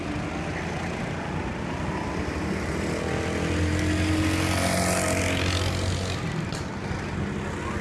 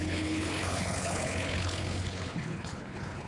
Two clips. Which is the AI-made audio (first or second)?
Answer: second